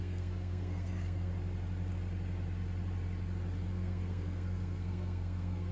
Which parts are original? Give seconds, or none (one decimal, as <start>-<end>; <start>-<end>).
1.3-3.7